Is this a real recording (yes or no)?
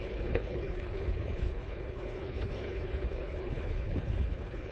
no